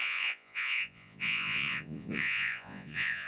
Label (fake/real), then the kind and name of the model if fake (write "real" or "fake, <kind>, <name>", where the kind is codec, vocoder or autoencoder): fake, vocoder, Vocos